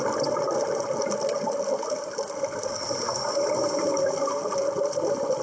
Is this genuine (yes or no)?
yes